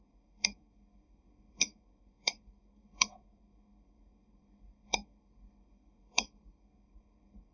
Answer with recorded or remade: remade